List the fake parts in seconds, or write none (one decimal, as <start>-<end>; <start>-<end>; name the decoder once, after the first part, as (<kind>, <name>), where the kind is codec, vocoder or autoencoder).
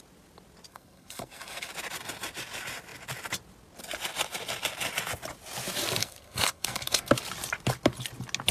0.7-1.7 (codec, SNAC); 6.0-7.1